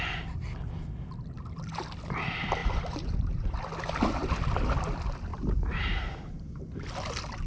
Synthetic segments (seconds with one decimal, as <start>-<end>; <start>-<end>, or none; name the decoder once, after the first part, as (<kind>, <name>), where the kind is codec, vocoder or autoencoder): 2.6-3.6 (vocoder, BigVGAN v2); 5.3-6.6